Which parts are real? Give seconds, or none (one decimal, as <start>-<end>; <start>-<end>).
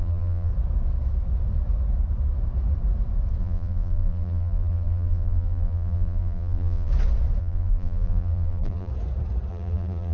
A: 0.5-3.4; 6.9-7.4; 8.9-9.5